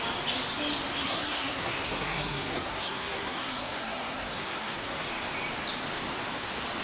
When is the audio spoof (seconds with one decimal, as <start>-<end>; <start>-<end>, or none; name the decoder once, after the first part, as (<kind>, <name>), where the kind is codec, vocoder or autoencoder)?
1.0-5.1 (codec, SNAC)